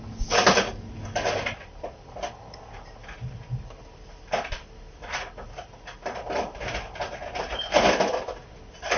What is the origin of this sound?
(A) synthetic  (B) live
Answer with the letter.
B